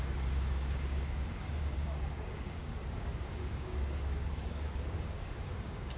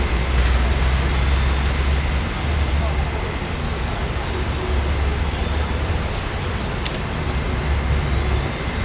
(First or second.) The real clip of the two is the second